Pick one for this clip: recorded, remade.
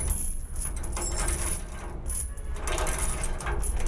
recorded